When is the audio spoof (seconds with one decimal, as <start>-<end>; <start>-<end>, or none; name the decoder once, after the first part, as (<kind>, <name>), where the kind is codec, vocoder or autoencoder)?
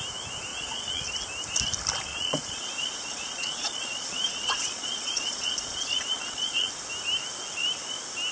0.5-1.0 (vocoder, Vocos); 2.1-6.7